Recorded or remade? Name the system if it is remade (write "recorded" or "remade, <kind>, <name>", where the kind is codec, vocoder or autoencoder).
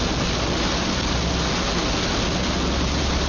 recorded